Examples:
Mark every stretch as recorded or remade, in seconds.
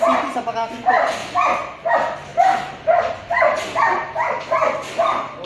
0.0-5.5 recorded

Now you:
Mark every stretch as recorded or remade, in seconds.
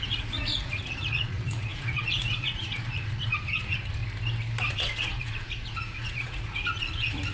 0.0-4.0 remade; 4.0-4.7 recorded; 4.7-7.3 remade